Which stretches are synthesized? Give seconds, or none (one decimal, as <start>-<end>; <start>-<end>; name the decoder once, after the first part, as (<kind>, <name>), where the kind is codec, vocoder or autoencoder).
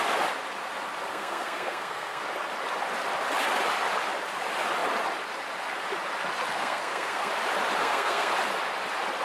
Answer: 1.1-2.2 (codec, SNAC); 6.5-7.3; 7.8-8.3